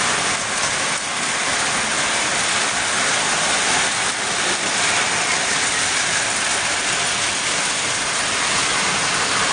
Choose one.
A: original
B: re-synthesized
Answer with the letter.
A